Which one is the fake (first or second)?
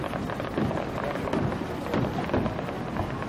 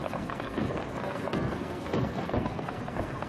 second